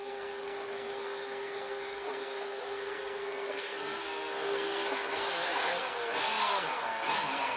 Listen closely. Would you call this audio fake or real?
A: fake